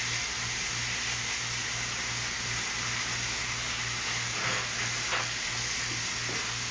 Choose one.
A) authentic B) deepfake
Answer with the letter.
A